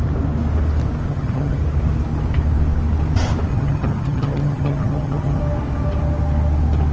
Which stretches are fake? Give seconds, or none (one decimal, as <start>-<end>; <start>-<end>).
1.1-1.6; 3.5-5.4